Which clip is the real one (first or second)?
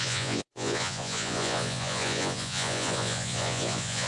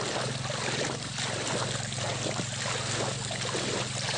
second